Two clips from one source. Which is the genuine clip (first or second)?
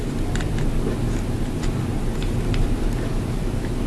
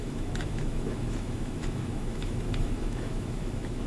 first